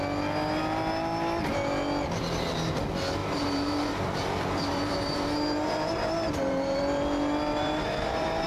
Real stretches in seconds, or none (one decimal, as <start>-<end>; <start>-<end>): 0.0-3.2; 6.8-7.5